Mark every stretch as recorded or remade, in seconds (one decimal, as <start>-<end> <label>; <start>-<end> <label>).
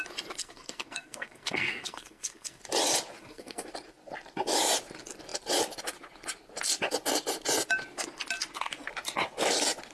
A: 0.0-0.4 recorded; 0.4-2.6 remade; 2.6-3.2 recorded; 3.2-3.7 remade; 3.7-9.9 recorded